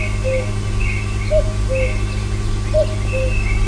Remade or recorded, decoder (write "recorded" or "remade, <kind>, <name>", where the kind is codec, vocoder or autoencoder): recorded